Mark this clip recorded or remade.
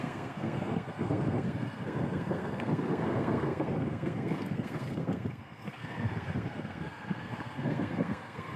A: remade